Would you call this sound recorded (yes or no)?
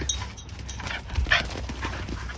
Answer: yes